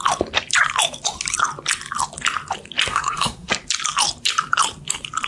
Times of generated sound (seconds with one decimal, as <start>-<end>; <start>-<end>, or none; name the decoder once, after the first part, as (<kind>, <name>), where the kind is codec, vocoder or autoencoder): 2.9-3.5 (codec, SNAC)